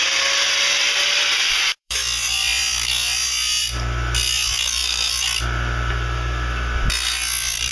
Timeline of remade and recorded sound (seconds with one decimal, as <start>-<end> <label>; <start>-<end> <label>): 0.0-0.8 recorded; 0.8-2.9 remade; 2.9-7.7 recorded